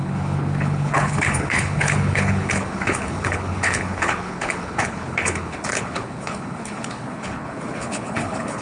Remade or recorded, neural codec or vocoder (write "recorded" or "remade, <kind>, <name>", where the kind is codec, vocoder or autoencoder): remade, codec, HILCodec